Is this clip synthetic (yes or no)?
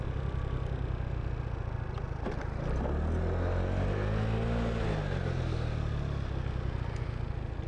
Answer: no